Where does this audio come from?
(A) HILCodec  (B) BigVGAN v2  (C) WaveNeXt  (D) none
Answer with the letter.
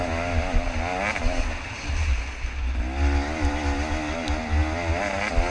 D